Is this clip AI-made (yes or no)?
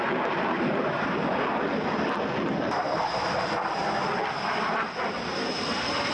no